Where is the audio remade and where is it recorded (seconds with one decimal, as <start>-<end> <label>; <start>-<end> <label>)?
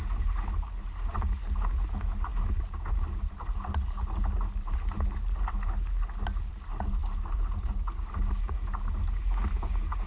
0.0-10.1 recorded